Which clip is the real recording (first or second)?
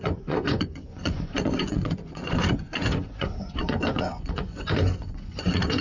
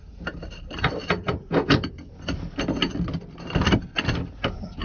second